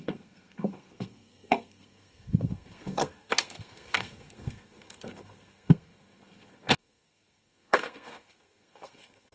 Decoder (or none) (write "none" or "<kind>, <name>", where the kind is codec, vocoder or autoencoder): codec, SNAC